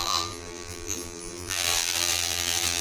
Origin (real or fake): fake